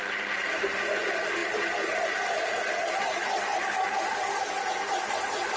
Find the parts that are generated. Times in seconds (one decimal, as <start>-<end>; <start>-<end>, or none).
none